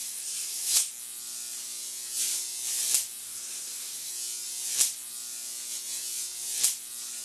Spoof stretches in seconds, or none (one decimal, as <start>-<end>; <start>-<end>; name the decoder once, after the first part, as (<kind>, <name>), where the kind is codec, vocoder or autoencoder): 0.0-0.9 (codec, SNAC); 3.2-4.1